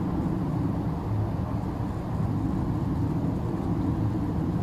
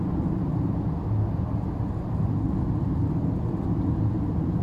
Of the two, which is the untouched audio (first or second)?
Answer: first